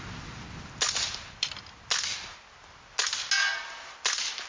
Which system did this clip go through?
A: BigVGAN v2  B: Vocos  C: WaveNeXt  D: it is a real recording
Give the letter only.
D